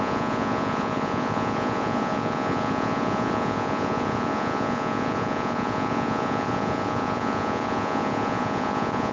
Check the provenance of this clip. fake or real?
fake